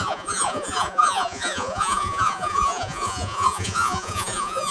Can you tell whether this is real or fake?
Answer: fake